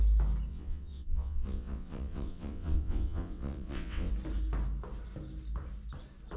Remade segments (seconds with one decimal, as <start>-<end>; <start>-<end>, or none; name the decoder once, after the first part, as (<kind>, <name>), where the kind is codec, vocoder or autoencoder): 0.5-4.1 (vocoder, WaveNeXt)